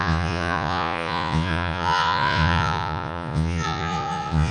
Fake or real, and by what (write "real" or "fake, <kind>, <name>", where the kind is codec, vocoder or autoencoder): fake, vocoder, Vocos